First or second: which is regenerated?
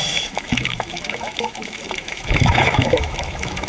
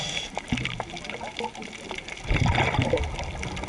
first